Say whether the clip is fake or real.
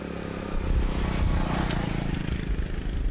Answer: real